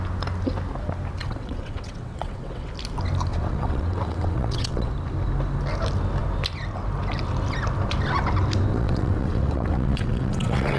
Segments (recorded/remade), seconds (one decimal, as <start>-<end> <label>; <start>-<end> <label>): 0.0-1.2 recorded; 1.2-2.7 remade; 2.7-3.3 recorded; 3.3-4.9 remade; 4.9-8.7 recorded; 8.7-10.8 remade